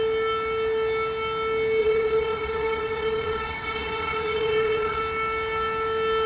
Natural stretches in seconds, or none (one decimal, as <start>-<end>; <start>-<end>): 0.0-1.8; 5.0-6.3